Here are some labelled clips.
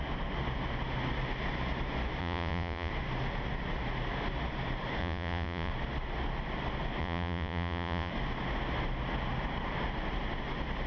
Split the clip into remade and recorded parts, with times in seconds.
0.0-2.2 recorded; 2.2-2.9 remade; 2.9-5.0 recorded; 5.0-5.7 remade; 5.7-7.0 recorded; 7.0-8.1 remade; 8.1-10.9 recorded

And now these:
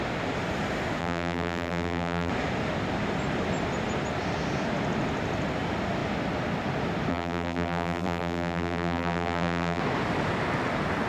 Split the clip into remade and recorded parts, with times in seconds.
0.0-1.0 recorded; 1.0-2.3 remade; 2.3-7.1 recorded; 7.1-9.8 remade; 9.8-11.1 recorded

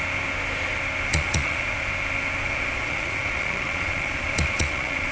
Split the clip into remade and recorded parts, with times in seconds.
0.0-1.1 recorded; 1.1-1.9 remade; 1.9-2.4 recorded; 2.4-5.1 remade